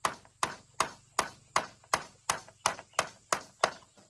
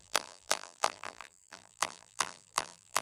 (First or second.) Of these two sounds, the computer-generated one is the second